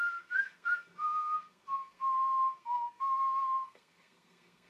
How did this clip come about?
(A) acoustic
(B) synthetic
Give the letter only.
B